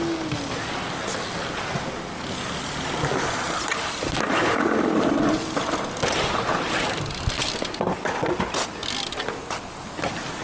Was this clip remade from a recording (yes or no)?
no